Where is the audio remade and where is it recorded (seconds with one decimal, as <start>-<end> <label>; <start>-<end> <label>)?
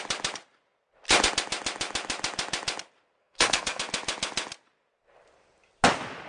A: 0.0-3.2 recorded; 3.2-3.8 remade; 3.8-6.3 recorded